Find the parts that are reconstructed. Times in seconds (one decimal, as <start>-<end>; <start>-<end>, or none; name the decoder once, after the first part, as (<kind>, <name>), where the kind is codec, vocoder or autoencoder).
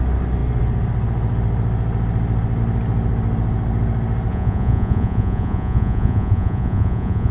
4.3-7.3 (vocoder, Vocos)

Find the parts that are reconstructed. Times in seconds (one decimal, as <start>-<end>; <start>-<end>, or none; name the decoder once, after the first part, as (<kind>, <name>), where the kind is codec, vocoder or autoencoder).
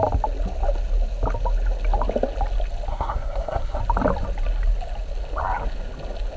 2.9-3.8 (codec, SNAC)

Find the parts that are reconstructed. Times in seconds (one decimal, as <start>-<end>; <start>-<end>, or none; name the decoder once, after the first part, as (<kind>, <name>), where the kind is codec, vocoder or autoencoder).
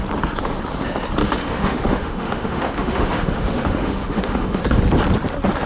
1.2-4.6 (autoencoder, DAC-VAE)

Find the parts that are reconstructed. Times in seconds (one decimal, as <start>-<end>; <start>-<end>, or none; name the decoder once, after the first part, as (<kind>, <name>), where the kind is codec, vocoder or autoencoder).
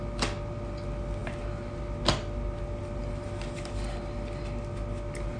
none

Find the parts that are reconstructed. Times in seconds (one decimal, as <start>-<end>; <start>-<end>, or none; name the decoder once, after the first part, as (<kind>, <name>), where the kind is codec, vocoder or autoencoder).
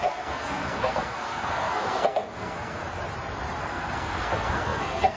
0.0-2.8 (codec, SNAC); 3.6-5.2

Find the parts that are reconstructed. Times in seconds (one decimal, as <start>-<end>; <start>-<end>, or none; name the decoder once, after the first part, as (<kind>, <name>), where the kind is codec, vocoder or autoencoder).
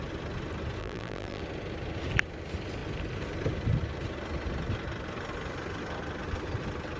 0.8-1.4 (vocoder, BigVGAN v2)